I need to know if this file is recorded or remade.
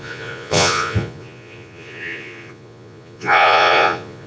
remade